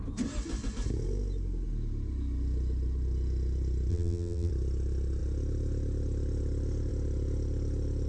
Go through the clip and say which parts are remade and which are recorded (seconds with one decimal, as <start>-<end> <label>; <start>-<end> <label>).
0.0-3.9 recorded; 3.9-4.5 remade; 4.5-8.1 recorded